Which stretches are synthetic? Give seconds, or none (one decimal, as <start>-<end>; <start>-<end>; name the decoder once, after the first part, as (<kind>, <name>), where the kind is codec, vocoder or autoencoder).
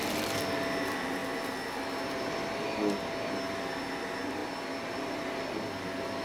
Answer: none